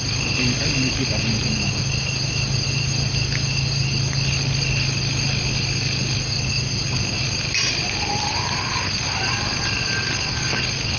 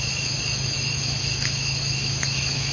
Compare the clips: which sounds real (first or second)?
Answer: first